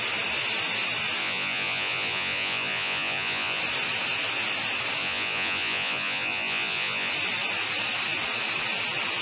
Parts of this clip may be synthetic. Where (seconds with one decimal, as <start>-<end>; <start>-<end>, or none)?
1.2-3.6; 5.0-7.1